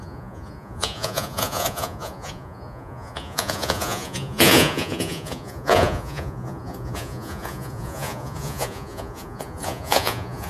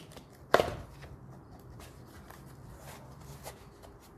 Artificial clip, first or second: first